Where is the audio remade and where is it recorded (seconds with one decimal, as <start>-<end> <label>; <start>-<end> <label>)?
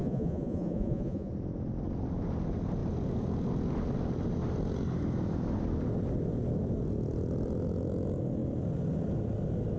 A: 0.0-1.3 remade; 1.3-9.8 recorded